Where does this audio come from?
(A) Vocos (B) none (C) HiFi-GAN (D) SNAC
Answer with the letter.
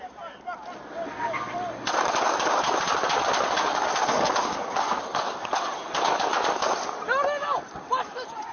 B